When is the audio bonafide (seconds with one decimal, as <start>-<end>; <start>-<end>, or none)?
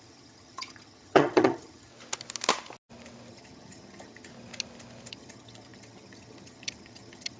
1.9-3.3; 4.3-5.1